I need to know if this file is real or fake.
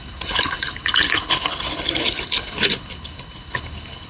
fake